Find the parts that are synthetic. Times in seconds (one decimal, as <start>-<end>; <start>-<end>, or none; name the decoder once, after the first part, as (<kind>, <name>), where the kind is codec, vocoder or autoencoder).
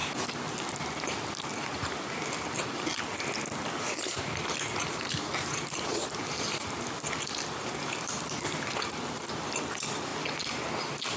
5.0-5.9 (vocoder, BigVGAN v2); 7.6-10.1